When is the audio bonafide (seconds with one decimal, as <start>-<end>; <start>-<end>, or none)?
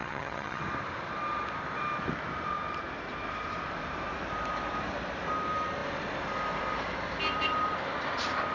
0.6-8.5